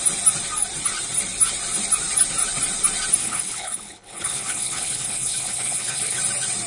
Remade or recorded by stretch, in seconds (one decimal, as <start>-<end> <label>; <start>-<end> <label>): 0.0-3.2 recorded; 3.2-6.2 remade; 6.2-6.7 recorded